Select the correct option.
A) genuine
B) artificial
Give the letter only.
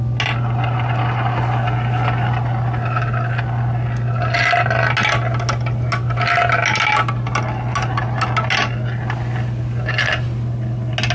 A